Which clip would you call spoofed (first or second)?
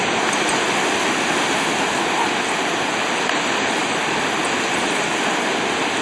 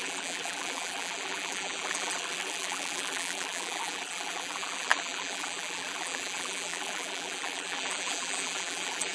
second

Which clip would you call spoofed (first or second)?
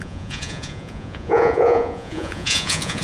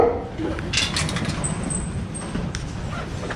first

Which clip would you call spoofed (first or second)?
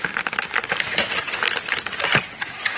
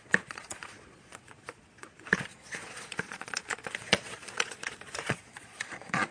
second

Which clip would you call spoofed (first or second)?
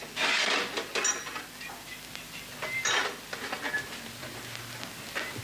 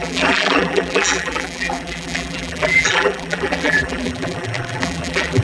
second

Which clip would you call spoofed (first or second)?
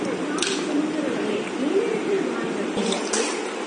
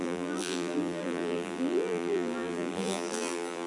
second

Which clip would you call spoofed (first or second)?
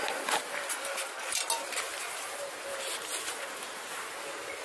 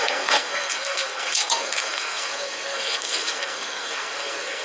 second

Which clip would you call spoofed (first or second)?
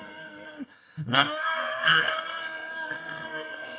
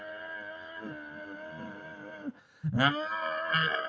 first